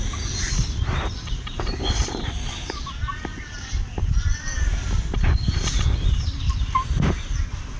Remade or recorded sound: recorded